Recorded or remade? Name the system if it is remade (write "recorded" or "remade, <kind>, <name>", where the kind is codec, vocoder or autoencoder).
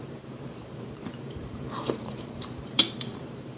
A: remade, vocoder, BigVGAN v2